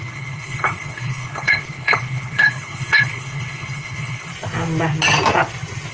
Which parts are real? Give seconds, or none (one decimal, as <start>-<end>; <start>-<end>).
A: 4.3-5.9